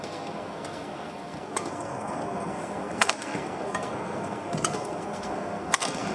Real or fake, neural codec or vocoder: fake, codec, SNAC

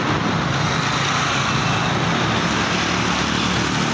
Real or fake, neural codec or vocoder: real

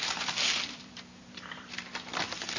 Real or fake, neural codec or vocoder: fake, vocoder, BigVGAN v2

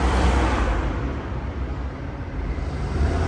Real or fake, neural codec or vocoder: fake, vocoder, BigVGAN v2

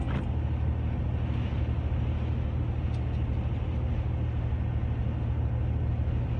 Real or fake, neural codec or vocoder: real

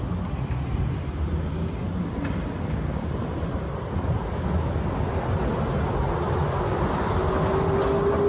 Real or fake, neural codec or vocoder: real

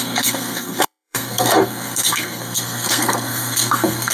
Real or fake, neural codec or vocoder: fake, codec, SNAC